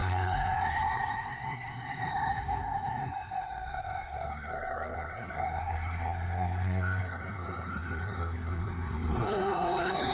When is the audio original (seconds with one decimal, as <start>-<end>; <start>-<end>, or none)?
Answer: none